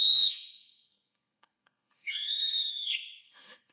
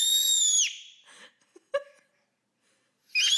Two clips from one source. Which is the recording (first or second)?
second